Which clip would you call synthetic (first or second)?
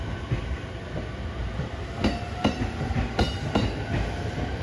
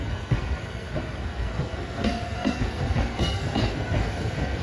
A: second